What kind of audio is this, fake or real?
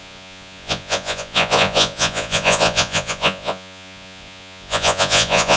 fake